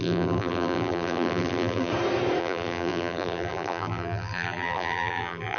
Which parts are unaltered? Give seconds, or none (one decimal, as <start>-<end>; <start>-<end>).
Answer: 1.9-2.4